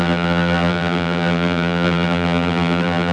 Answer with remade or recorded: remade